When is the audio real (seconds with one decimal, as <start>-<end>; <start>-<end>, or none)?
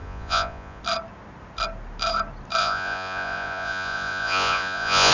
0.8-2.6